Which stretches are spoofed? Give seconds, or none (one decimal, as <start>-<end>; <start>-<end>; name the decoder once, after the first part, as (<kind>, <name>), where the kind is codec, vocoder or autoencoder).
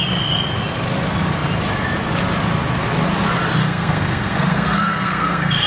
3.6-5.7 (codec, SNAC)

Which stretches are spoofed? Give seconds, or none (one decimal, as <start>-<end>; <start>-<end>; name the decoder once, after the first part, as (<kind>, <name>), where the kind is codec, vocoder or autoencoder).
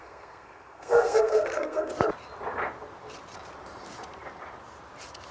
0.0-1.9 (codec, SNAC)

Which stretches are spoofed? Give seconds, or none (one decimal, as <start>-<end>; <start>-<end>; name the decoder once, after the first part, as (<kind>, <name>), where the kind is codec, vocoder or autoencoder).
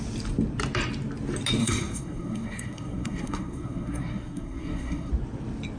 1.6-5.1 (codec, SNAC)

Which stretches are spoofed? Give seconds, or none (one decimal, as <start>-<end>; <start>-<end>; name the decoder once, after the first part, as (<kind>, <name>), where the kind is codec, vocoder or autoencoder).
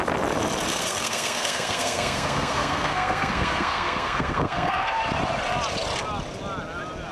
0.7-5.0 (codec, SNAC)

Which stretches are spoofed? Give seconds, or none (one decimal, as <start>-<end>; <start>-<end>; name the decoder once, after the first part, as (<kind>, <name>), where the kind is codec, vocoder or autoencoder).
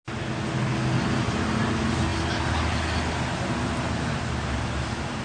none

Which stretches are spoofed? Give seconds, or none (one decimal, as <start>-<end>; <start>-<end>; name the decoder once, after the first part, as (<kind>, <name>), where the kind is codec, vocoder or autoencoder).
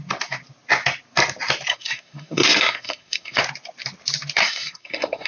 1.7-3.4 (codec, SNAC); 4.4-5.3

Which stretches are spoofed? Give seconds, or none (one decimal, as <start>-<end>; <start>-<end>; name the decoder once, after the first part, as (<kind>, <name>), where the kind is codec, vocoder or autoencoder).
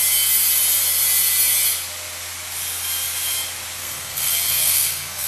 3.8-5.3 (codec, SNAC)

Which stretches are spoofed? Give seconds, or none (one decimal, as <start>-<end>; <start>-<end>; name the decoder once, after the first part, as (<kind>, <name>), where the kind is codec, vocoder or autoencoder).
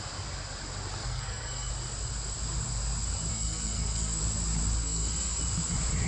1.0-1.7 (codec, SNAC); 3.3-4.2; 4.8-5.4